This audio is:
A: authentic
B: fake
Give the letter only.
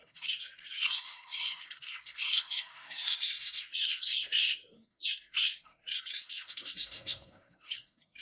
B